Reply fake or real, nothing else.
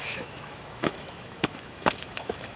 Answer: fake